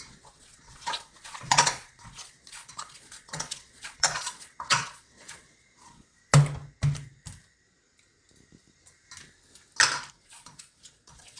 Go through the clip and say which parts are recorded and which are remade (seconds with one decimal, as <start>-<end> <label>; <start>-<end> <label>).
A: 0.0-6.2 remade; 6.2-10.1 recorded; 10.1-11.4 remade